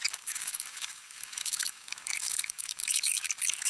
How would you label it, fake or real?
fake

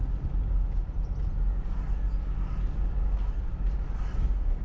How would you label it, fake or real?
real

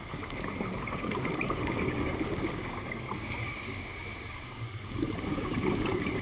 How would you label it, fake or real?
fake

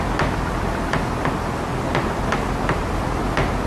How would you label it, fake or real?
real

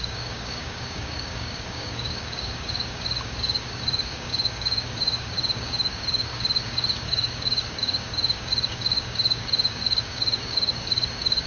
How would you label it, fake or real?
fake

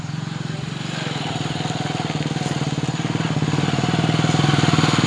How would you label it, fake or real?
real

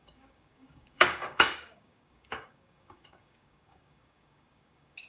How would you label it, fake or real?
fake